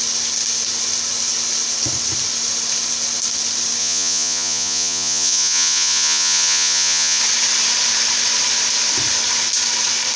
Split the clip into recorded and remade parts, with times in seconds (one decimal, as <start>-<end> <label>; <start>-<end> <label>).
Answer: 0.0-3.8 recorded; 3.8-7.2 remade; 7.2-10.2 recorded